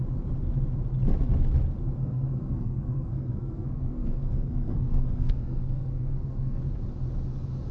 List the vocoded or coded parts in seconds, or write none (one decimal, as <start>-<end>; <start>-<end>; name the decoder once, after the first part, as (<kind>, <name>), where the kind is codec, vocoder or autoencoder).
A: 2.0-6.6 (codec, SNAC)